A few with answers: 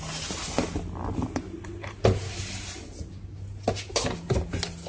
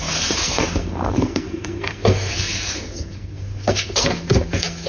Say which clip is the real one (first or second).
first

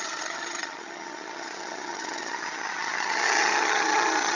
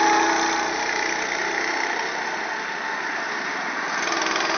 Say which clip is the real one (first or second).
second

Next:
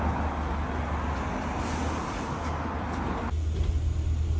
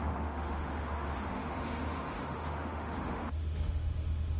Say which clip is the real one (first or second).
first